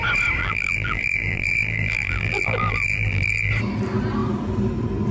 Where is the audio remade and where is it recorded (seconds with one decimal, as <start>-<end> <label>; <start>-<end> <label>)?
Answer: 0.0-0.4 recorded; 0.4-3.5 remade; 3.5-5.1 recorded